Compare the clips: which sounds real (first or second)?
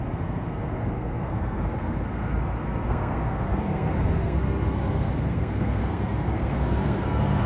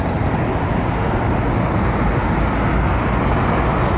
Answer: second